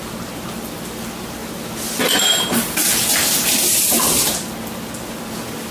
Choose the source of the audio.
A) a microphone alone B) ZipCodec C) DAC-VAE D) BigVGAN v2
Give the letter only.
A